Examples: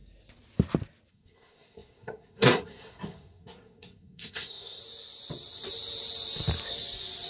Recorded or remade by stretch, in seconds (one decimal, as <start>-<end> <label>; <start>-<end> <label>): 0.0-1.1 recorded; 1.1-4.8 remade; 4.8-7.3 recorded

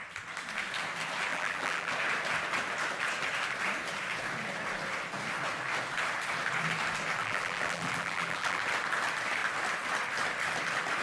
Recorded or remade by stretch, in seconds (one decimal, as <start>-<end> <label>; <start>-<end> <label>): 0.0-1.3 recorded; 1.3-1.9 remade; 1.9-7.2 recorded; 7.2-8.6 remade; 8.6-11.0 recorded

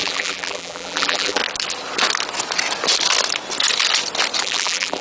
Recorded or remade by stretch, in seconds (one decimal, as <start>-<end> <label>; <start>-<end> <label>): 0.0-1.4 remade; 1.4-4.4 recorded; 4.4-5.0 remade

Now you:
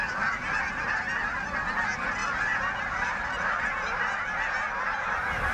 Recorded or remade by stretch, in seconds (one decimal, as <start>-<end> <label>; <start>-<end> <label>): 0.0-2.2 recorded; 2.2-3.3 remade; 3.3-5.5 recorded